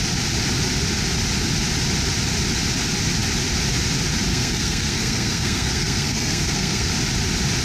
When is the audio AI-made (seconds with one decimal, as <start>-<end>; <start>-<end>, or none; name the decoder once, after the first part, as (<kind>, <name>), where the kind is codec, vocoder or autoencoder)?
4.3-6.9 (codec, SNAC)